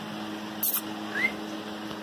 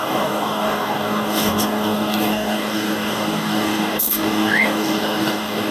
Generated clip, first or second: second